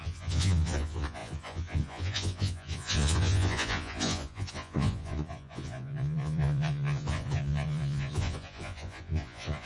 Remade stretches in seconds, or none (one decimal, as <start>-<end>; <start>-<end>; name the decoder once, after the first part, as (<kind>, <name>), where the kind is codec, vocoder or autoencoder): 0.0-9.7 (vocoder, Vocos)

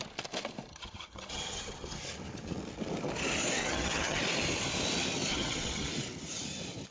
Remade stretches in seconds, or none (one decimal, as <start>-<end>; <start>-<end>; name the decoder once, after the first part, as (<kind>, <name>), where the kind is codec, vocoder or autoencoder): 0.7-2.0 (vocoder, HiFi-GAN); 3.6-4.2; 5.3-5.9